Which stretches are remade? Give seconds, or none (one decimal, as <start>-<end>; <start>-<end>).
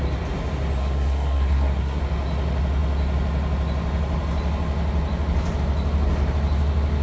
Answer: 0.8-2.0